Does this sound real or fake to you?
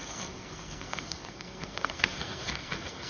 fake